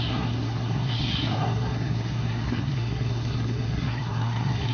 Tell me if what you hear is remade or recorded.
remade